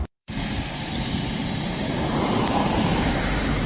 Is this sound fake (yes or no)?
yes